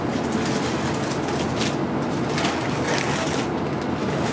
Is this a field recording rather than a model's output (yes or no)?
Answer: yes